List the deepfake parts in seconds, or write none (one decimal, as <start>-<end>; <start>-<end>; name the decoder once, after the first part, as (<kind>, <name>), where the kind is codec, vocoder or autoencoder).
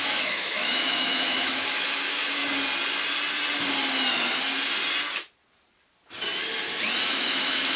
0.0-2.4 (autoencoder, DAC-VAE); 7.1-7.8